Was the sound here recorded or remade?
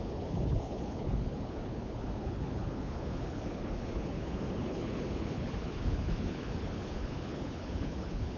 remade